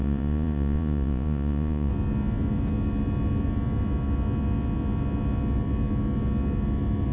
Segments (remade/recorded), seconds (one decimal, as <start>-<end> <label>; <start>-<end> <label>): 0.0-1.9 remade; 1.9-7.1 recorded